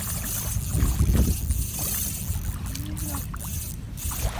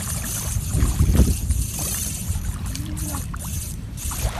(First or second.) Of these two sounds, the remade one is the second